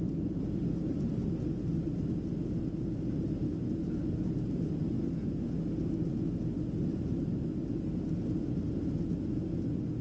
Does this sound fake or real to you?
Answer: real